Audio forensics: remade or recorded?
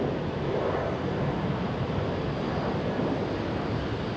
recorded